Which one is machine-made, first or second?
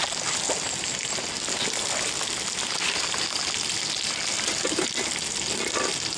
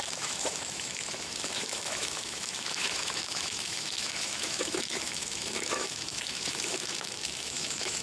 second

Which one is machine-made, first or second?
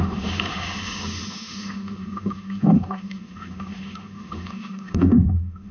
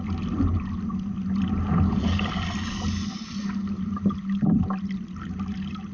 first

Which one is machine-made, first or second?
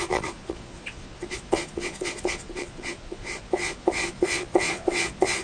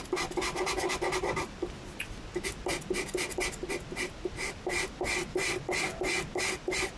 first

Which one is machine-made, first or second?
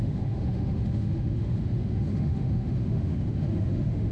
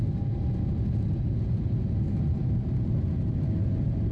first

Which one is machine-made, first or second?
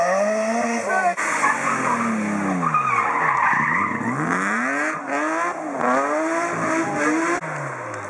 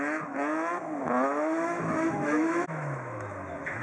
second